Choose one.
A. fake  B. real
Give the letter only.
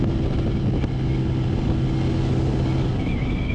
B